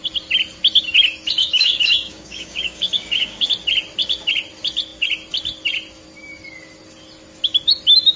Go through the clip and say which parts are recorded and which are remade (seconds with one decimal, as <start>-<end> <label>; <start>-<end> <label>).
0.0-1.4 recorded; 1.4-3.5 remade; 3.5-8.2 recorded